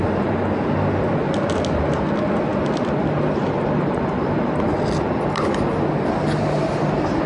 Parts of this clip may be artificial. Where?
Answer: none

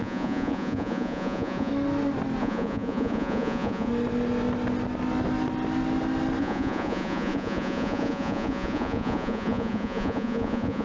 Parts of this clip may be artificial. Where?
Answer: 0.0-1.7 (vocoder, Vocos); 2.4-3.9; 6.4-10.8

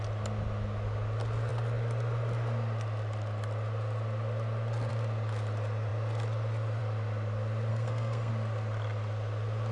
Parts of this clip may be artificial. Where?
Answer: 7.7-8.3 (codec, SNAC)

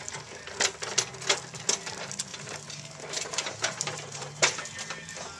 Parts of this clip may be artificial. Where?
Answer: 2.3-4.6 (vocoder, BigVGAN v2)